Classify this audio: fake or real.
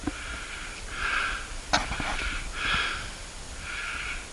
real